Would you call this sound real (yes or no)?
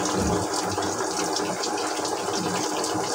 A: yes